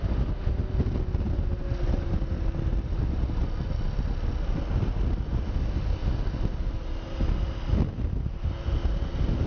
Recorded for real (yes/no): yes